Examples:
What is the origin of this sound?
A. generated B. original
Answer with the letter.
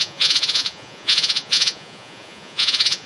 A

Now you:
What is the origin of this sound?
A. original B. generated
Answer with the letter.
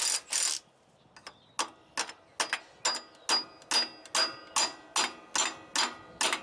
A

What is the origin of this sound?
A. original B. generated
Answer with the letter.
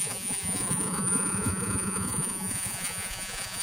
B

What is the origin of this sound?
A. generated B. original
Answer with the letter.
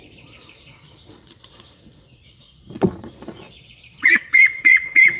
A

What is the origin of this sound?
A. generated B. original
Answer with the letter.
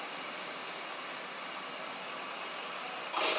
B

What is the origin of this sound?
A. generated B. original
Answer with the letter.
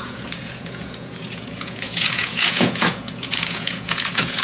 A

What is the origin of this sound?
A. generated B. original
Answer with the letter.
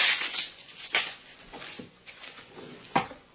A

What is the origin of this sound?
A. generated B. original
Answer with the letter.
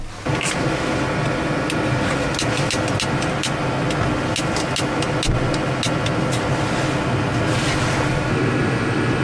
B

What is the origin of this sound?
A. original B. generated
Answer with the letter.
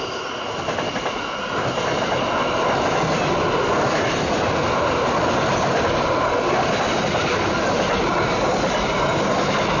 A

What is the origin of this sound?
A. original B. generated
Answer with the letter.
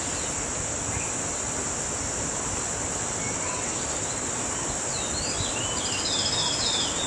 A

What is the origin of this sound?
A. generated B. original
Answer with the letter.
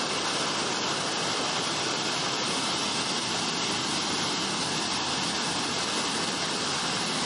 B